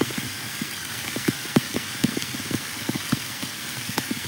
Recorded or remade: remade